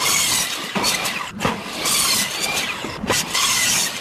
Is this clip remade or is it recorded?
recorded